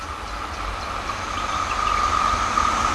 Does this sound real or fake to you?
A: real